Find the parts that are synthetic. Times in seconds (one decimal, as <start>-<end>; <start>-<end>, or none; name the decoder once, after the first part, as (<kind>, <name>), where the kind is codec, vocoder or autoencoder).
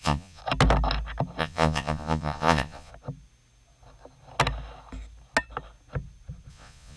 0.0-0.4 (vocoder, Vocos); 1.4-2.9; 6.5-7.0